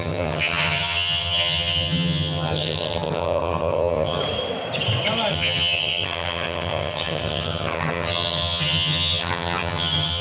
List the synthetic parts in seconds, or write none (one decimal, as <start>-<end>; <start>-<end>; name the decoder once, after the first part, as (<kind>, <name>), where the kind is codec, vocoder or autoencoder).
0.0-4.2 (vocoder, HiFi-GAN); 5.3-10.2